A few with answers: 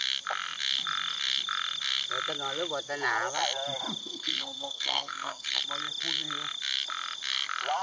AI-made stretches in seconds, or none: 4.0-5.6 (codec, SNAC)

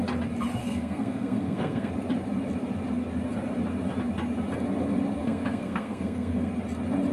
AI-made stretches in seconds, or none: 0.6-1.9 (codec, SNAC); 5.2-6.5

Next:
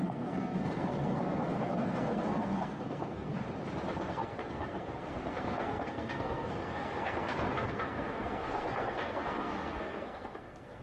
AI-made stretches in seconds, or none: 0.0-3.3 (codec, SNAC); 3.9-10.8

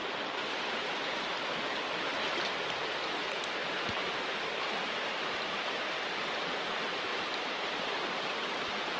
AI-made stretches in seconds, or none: none

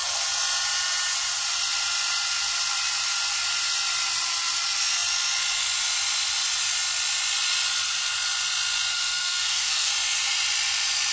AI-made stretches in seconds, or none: 8.9-9.9 (codec, SNAC)

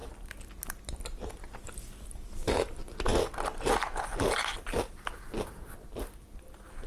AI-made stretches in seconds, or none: none